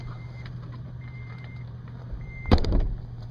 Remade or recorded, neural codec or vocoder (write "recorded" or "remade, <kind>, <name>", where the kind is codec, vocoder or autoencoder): remade, vocoder, BigVGAN v2